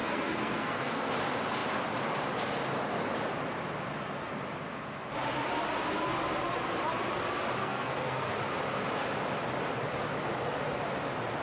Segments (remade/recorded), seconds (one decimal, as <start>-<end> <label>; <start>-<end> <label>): 0.0-1.1 remade; 1.1-7.6 recorded; 7.6-8.3 remade; 8.3-11.4 recorded

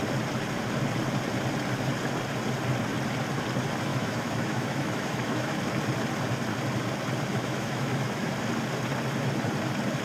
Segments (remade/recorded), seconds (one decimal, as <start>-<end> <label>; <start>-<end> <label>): 0.0-3.9 recorded; 3.9-5.6 remade; 5.6-7.3 recorded; 7.3-8.3 remade; 8.3-10.0 recorded

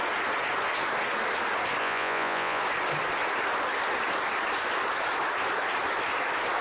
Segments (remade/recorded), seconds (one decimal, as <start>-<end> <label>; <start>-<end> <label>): 0.0-1.8 recorded; 1.8-2.6 remade; 2.6-6.6 recorded

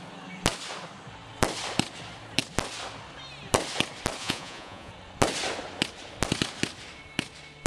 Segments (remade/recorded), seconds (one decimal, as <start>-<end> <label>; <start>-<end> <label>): 0.0-4.2 recorded; 4.2-4.9 remade; 4.9-7.7 recorded

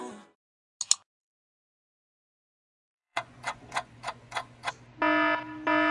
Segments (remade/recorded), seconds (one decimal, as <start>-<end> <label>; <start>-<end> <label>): 0.0-1.2 recorded; 1.2-4.7 remade; 4.7-5.9 recorded